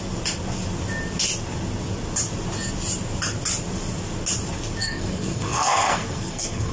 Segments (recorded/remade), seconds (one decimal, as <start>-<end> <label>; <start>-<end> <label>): 0.0-4.8 recorded; 4.8-6.7 remade